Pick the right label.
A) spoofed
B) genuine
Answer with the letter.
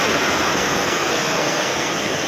A